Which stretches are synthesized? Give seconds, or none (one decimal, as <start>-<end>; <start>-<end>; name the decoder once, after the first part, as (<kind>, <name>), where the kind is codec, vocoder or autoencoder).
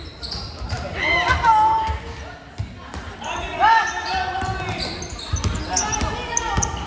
none